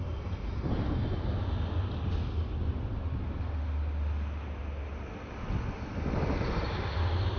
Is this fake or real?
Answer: real